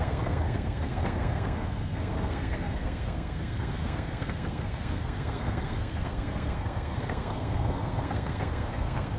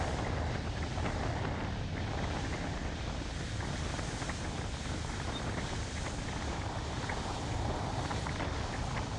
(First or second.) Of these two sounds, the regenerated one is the first